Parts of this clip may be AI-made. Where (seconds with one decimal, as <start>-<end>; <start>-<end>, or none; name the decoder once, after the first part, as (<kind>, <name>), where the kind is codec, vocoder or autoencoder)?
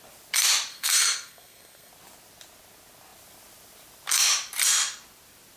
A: 0.7-1.9 (codec, SNAC)